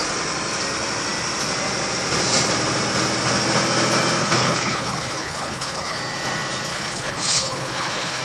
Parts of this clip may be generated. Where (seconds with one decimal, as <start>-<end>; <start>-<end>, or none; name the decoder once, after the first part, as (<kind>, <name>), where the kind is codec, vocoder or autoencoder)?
4.2-6.0 (codec, HILCodec); 6.7-8.2